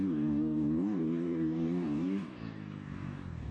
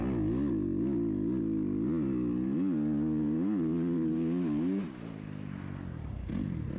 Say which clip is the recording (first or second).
second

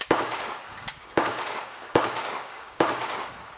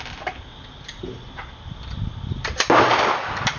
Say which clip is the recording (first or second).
second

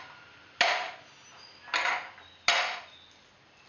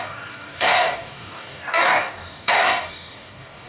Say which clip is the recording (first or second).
first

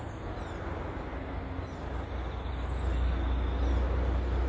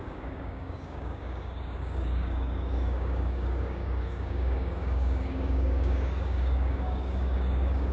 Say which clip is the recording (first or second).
first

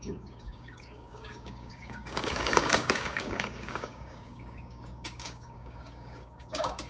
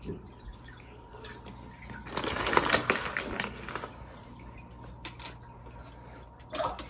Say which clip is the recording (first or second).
second